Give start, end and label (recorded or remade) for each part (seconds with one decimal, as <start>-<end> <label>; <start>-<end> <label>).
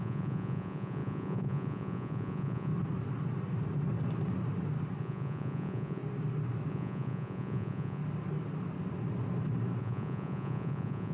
0.0-2.7 remade; 2.7-5.0 recorded; 5.0-6.0 remade; 6.0-6.7 recorded; 6.7-8.0 remade; 8.0-9.8 recorded; 9.8-11.1 remade